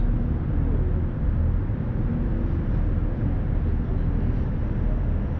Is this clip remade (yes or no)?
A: no